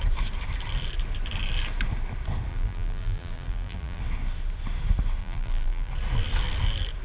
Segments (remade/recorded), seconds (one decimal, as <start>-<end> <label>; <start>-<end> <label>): 0.0-2.5 recorded; 2.5-4.0 remade; 4.0-5.2 recorded; 5.2-5.9 remade; 5.9-7.0 recorded